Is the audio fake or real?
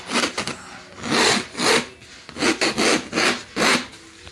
real